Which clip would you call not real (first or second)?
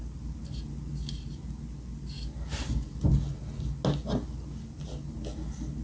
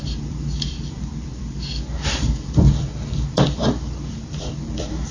second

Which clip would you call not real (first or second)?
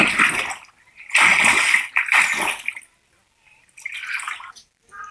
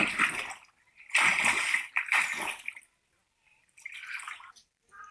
second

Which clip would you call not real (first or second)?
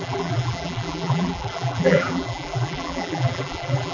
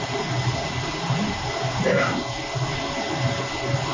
first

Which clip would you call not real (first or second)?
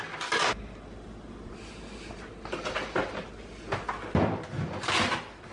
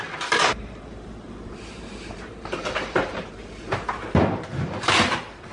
second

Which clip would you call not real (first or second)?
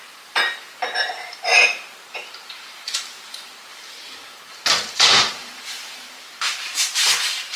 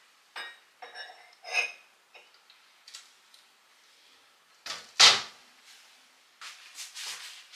first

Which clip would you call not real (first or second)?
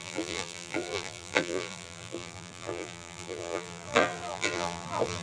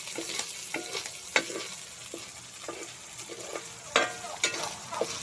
first